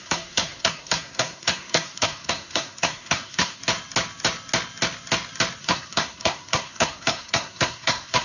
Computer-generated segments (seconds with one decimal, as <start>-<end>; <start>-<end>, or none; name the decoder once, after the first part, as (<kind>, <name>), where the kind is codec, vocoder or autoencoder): 0.0-3.6 (codec, SNAC); 5.6-8.2